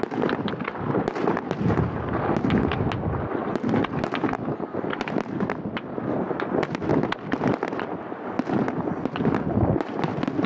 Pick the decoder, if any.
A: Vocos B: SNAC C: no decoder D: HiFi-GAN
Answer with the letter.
C